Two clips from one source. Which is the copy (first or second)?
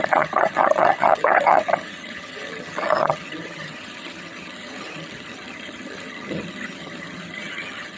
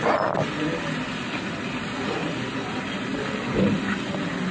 first